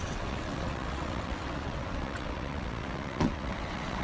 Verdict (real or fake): fake